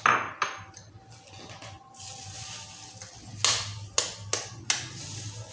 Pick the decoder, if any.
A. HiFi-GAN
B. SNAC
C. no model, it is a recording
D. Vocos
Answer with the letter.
C